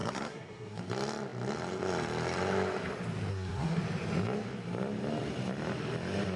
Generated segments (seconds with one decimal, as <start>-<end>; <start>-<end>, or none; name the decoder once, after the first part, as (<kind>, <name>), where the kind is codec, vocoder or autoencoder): 0.0-0.8 (codec, SNAC); 3.3-3.8